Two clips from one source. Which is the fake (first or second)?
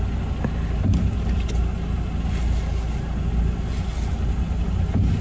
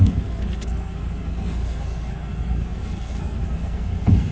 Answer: second